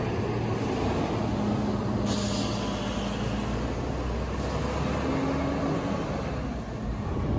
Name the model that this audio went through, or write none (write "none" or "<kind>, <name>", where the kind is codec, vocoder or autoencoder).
none